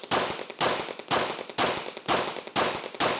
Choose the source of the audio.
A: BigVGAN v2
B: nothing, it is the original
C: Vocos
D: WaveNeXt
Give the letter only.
B